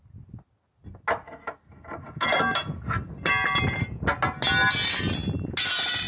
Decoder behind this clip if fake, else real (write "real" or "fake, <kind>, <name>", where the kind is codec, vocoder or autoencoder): real